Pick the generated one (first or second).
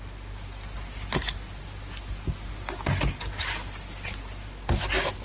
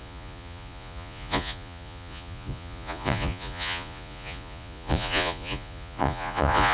second